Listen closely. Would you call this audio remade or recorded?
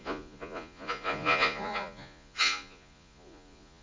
remade